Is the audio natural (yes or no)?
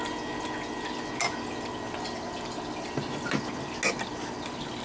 yes